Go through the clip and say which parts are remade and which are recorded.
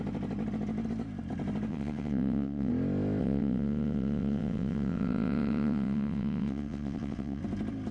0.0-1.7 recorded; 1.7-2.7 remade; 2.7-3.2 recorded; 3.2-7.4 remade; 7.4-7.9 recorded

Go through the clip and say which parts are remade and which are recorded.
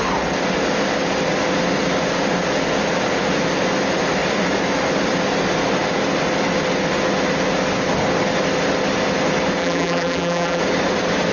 0.0-9.6 recorded; 9.6-10.6 remade; 10.6-11.3 recorded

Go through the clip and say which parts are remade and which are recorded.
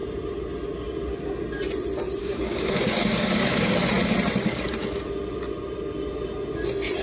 0.0-2.2 recorded; 2.2-3.7 remade; 3.7-7.0 recorded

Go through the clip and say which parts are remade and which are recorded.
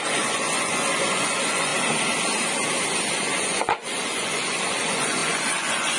0.0-1.7 remade; 1.7-3.1 recorded; 3.1-6.0 remade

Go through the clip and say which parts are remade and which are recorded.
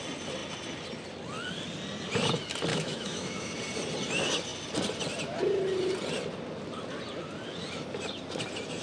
0.0-2.7 recorded; 2.7-3.5 remade; 3.5-8.8 recorded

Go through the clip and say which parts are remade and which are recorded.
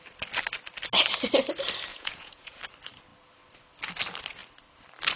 0.0-1.9 recorded; 1.9-2.6 remade; 2.6-5.2 recorded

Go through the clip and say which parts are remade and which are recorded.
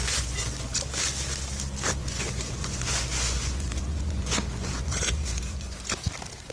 0.0-0.8 remade; 0.8-2.0 recorded; 2.0-5.9 remade; 5.9-6.5 recorded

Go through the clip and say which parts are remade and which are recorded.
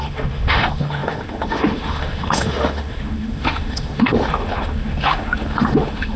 0.0-6.2 remade